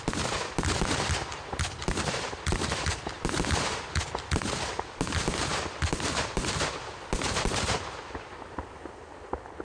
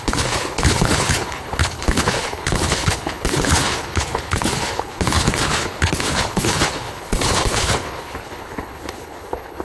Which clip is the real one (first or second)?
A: first